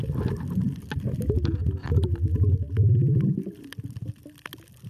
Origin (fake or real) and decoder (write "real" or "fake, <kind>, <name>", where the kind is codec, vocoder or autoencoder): real